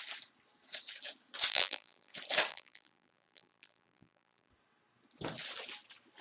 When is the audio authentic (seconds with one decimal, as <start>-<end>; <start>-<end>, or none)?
0.0-1.5; 2.1-2.5; 4.5-6.2